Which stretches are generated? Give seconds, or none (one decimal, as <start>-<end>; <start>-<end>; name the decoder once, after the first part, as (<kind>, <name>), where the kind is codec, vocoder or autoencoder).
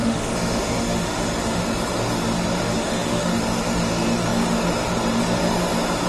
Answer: 0.0-1.6 (autoencoder, DAC-VAE); 2.6-3.4